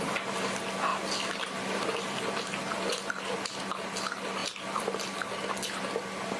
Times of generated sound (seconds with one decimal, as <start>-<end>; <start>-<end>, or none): 0.9-2.2; 4.4-5.5